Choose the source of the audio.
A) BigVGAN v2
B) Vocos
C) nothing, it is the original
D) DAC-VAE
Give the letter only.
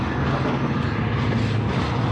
C